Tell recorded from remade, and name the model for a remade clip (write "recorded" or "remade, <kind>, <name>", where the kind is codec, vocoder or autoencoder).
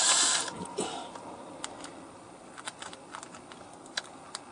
recorded